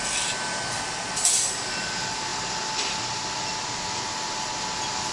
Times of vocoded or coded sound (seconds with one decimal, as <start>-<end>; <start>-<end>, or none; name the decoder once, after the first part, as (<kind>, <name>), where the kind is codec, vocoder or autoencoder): none